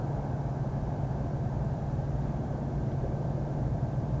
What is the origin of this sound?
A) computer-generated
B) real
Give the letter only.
A